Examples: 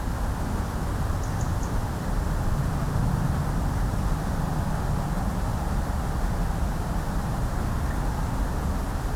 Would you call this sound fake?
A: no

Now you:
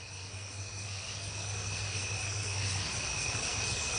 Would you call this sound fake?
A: yes